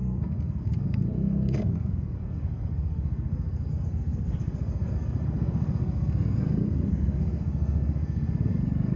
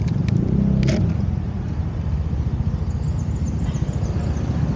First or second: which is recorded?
second